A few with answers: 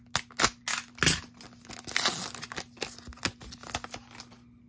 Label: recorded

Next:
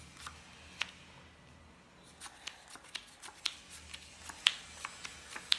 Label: recorded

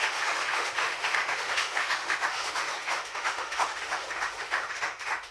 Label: remade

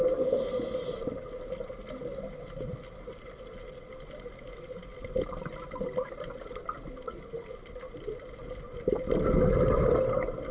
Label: recorded